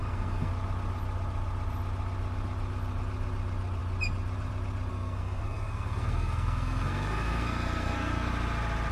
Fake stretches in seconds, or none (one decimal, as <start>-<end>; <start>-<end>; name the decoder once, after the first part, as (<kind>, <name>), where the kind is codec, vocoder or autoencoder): 0.0-0.5 (codec, SNAC); 4.9-8.3